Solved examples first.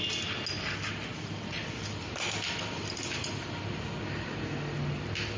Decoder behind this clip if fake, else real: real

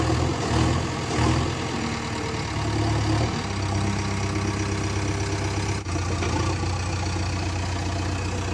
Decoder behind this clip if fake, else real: real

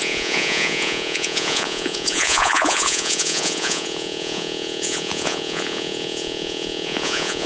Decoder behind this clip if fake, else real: fake, vocoder, Vocos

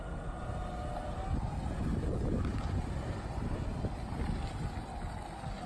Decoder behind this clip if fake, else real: real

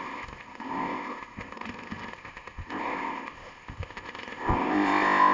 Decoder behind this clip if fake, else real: fake, codec, ZipCodec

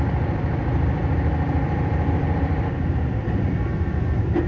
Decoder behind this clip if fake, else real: fake, vocoder, BigVGAN v2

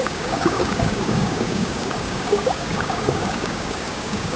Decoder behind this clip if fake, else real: fake, codec, DAC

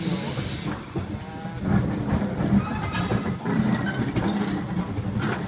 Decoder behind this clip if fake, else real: real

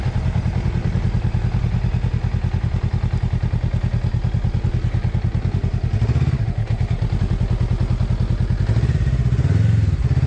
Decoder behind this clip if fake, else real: real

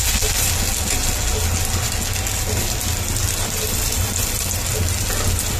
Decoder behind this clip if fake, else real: real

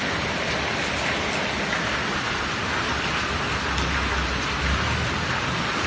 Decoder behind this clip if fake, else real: real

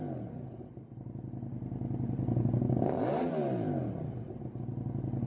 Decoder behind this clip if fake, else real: real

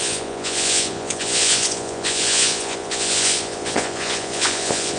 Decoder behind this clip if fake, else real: fake, vocoder, Vocos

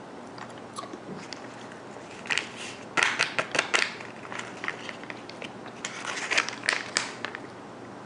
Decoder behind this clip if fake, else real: real